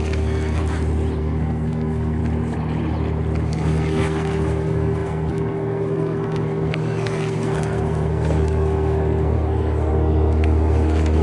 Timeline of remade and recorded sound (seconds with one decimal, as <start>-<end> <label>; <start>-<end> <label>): 0.0-0.6 remade; 0.6-1.2 recorded; 1.2-2.2 remade; 2.2-3.5 recorded; 3.5-11.2 remade